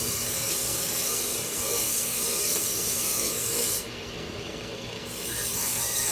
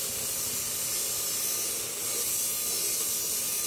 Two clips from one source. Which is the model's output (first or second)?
first